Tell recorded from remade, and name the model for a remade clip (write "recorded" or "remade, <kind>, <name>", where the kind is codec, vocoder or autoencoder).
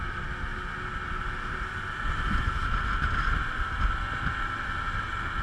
recorded